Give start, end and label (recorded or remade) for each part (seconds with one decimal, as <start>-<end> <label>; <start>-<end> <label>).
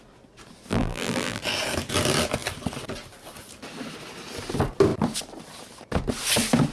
0.0-0.7 recorded; 0.7-1.4 remade; 1.4-6.7 recorded